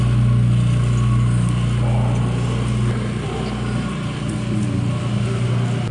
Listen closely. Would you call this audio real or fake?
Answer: real